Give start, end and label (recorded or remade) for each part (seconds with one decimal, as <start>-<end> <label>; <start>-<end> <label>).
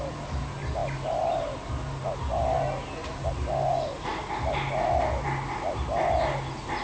0.0-6.8 recorded